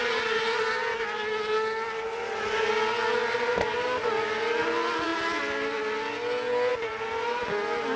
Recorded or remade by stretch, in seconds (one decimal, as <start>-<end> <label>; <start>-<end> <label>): 0.0-8.0 recorded